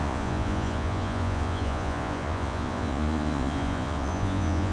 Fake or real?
fake